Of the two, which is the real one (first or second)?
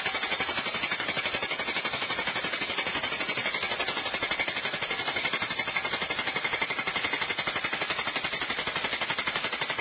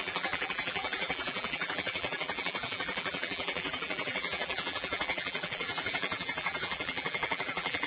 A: first